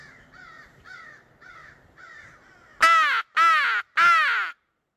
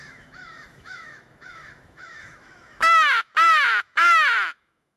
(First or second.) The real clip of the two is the first